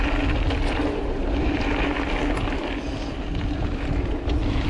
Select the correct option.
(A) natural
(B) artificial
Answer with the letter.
A